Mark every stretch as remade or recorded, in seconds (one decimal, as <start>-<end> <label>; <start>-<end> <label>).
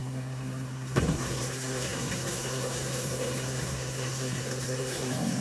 0.0-5.4 remade